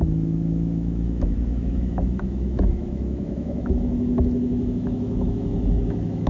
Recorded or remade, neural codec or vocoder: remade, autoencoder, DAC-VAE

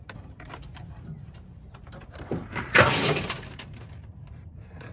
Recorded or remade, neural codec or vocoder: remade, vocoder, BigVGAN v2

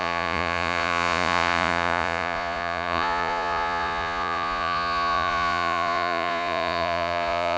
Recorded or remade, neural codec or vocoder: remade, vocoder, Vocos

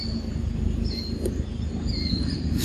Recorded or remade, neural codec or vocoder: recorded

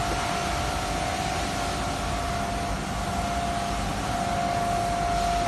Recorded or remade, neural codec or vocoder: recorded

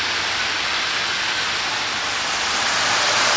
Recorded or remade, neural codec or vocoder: recorded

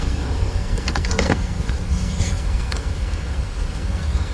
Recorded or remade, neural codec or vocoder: remade, codec, SNAC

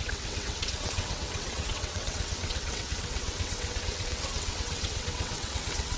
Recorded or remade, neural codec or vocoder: remade, vocoder, WaveNeXt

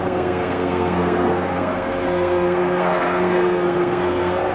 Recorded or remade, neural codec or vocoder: remade, codec, SNAC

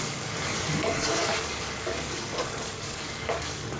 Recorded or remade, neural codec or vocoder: remade, codec, DAC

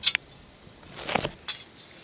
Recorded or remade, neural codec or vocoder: recorded